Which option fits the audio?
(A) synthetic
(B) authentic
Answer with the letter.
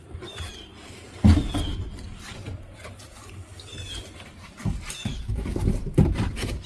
B